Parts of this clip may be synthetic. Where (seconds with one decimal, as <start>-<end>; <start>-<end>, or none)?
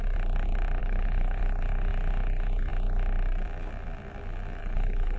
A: 0.8-1.4; 4.6-5.2